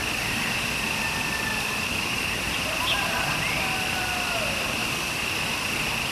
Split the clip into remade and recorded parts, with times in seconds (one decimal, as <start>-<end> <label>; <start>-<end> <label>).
0.0-1.9 recorded; 1.9-2.4 remade; 2.4-4.8 recorded; 4.8-5.3 remade; 5.3-6.1 recorded